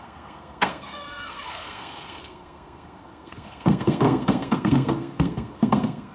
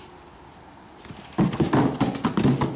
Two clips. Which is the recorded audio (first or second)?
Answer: second